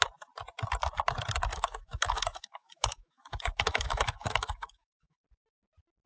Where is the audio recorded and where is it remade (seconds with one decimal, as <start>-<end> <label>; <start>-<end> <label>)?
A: 0.0-1.5 recorded; 1.5-5.2 remade; 5.2-6.1 recorded